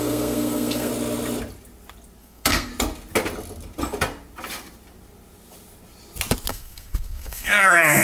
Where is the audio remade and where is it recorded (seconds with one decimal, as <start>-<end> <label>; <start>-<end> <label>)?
0.0-0.9 remade; 0.9-2.2 recorded; 2.2-2.7 remade; 2.7-6.5 recorded; 6.5-8.0 remade